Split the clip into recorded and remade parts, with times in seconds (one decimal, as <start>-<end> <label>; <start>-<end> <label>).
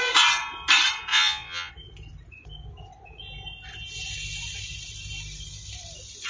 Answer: 0.0-1.1 recorded; 1.1-1.7 remade; 1.7-6.3 recorded